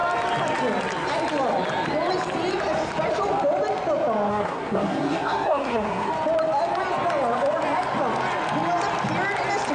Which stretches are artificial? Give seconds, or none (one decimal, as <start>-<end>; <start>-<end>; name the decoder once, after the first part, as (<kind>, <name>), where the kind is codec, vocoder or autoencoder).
4.3-6.1 (codec, SNAC)